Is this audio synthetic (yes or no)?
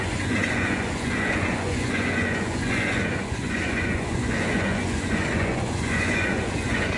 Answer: yes